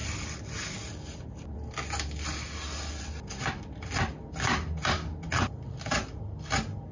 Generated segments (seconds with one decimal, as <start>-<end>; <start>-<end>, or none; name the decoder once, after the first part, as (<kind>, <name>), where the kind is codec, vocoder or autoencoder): none